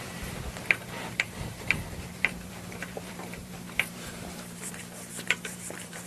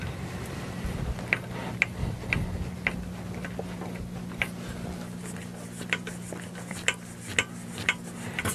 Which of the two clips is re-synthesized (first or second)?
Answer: first